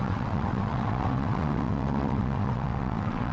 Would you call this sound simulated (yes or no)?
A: yes